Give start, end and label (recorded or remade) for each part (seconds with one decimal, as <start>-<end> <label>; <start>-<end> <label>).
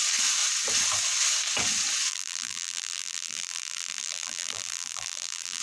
0.0-2.1 recorded; 2.1-5.6 remade